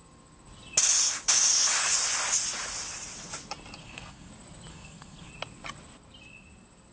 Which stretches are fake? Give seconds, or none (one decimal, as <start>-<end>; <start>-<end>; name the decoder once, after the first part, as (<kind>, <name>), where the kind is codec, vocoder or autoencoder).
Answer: 3.8-4.3 (codec, SNAC); 4.7-5.3